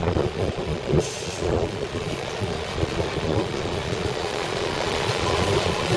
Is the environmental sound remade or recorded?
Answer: remade